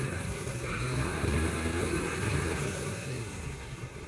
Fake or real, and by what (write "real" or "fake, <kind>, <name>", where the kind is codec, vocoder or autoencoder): fake, codec, SNAC